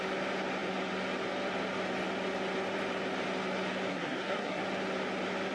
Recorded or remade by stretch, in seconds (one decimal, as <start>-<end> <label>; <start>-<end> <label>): 0.0-3.9 recorded; 3.9-4.6 remade; 4.6-5.5 recorded